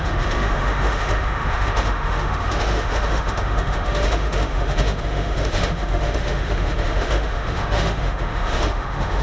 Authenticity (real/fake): fake